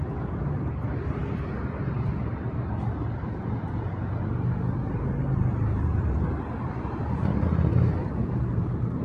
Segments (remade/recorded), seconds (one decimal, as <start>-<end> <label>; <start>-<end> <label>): 0.0-9.0 recorded